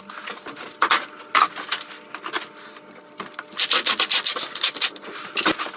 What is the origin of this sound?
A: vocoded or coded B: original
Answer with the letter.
B